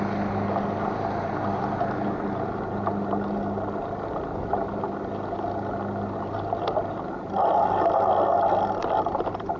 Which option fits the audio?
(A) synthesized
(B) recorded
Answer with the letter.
B